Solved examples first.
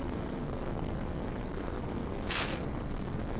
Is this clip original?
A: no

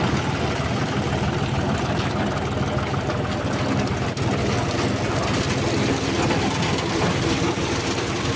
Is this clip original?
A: yes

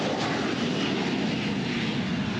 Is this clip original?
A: yes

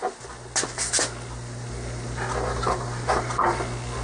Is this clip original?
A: yes